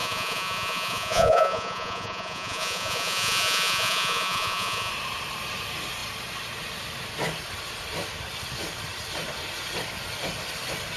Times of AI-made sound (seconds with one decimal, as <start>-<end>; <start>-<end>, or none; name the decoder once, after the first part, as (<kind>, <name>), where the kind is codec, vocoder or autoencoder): 0.0-4.9 (vocoder, Vocos)